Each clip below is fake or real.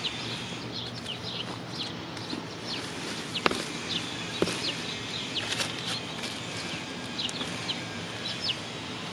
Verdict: real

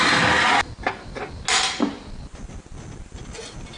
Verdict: real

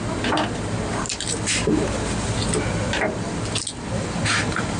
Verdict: real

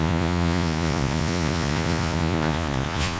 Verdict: fake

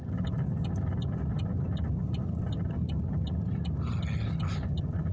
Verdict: real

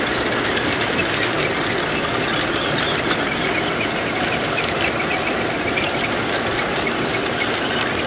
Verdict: real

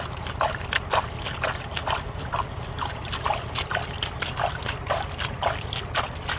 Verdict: real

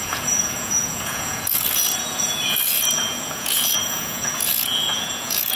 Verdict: fake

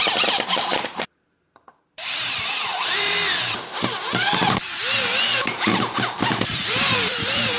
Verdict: fake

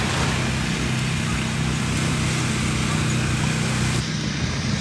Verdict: real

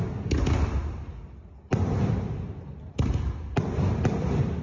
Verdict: real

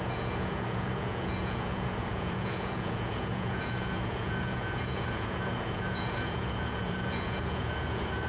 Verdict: fake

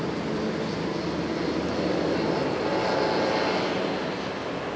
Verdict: real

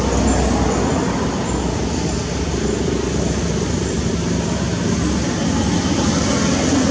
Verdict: real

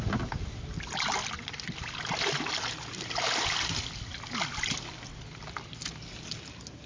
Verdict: real